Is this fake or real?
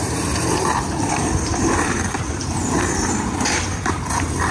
fake